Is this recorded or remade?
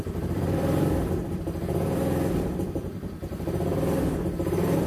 remade